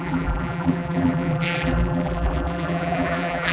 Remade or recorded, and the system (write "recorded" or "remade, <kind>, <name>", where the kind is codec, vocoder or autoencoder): remade, vocoder, BigVGAN v2